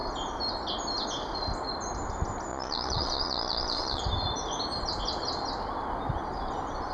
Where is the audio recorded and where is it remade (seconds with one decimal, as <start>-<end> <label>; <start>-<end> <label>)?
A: 0.0-2.5 recorded; 2.5-4.0 remade; 4.0-6.9 recorded